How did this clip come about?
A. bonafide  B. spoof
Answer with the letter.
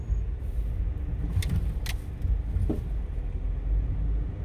A